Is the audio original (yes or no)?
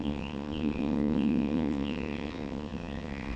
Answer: no